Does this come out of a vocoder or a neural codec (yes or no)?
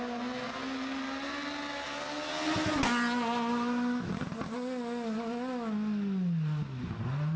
no